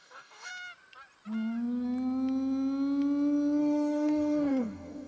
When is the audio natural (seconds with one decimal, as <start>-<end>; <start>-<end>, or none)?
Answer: 0.5-3.6